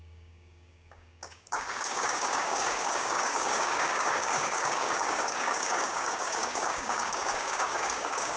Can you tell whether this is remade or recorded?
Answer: remade